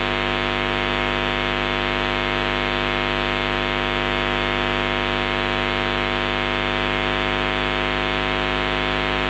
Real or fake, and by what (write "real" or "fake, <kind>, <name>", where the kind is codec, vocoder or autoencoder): real